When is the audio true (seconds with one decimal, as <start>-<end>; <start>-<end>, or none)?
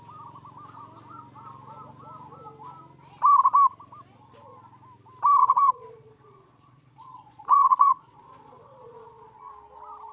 0.0-5.4; 9.5-10.1